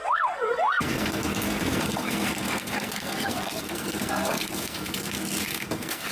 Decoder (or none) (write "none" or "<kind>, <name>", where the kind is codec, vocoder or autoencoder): codec, SNAC